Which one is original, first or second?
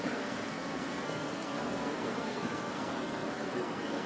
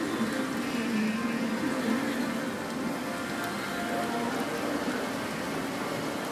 second